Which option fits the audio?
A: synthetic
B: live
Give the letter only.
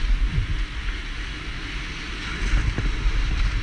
B